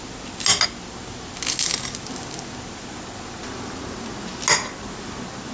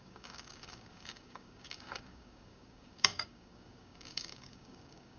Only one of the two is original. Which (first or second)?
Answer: first